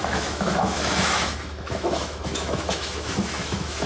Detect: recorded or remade remade